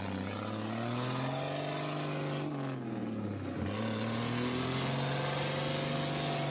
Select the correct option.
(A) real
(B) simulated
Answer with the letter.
A